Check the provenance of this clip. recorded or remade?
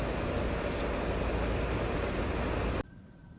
recorded